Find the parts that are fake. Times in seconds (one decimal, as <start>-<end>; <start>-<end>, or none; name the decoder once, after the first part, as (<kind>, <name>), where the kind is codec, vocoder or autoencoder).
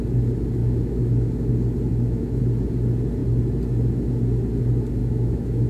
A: 0.6-1.5 (autoencoder, DAC-VAE); 1.9-2.4; 5.0-5.7